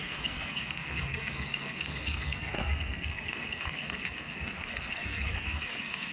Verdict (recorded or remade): remade